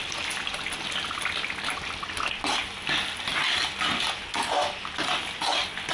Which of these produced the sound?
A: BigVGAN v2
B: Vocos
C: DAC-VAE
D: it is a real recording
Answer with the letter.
D